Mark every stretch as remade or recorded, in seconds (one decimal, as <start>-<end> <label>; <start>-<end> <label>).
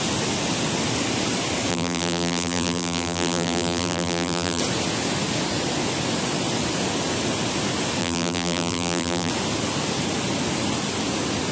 0.0-1.7 recorded; 1.7-4.6 remade; 4.6-8.0 recorded; 8.0-9.3 remade; 9.3-11.5 recorded